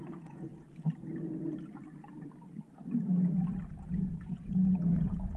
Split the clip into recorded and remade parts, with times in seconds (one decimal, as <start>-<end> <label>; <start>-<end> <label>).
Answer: 0.0-0.5 remade; 0.5-3.7 recorded; 3.7-5.4 remade